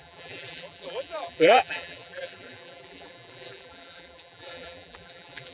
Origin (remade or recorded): remade